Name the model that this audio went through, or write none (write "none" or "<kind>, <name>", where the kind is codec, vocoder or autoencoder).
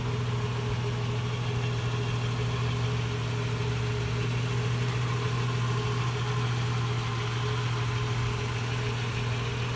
none